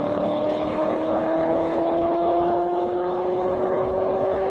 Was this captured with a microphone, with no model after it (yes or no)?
no